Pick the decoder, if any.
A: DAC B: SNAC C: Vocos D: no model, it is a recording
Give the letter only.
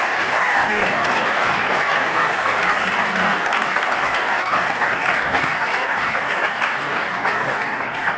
A